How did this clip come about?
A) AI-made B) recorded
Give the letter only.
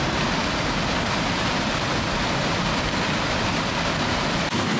B